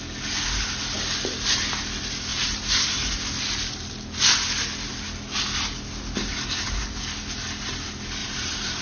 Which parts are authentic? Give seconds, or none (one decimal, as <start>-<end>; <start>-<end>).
0.0-2.3; 3.1-8.2